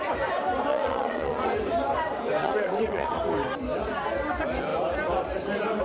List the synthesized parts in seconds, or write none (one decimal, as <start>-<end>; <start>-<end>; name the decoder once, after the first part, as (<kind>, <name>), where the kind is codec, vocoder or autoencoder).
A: 0.7-1.5 (vocoder, Vocos); 2.4-3.2